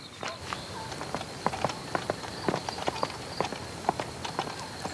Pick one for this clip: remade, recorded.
recorded